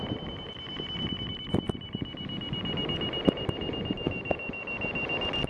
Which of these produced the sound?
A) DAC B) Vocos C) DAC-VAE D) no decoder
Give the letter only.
D